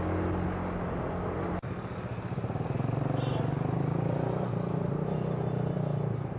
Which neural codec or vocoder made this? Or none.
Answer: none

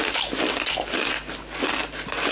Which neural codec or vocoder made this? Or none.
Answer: none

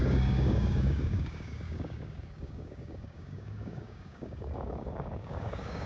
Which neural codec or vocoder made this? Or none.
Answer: codec, DAC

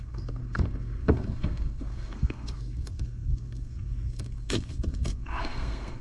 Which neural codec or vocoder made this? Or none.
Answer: codec, SNAC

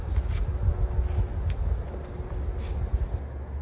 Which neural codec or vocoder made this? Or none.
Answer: none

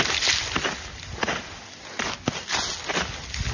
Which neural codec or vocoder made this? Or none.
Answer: none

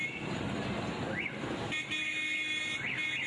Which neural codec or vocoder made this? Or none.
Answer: none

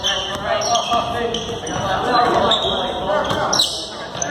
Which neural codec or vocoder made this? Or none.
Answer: none